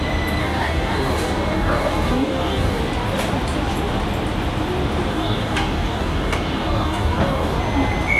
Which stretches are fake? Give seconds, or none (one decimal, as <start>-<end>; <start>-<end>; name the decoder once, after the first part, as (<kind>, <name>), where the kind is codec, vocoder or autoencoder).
0.4-2.8 (codec, DAC); 5.1-7.6